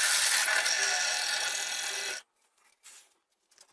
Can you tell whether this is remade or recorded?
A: recorded